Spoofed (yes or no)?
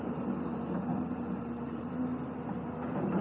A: no